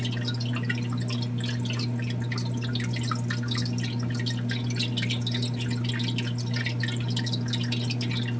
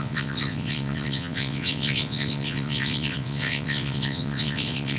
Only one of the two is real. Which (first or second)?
first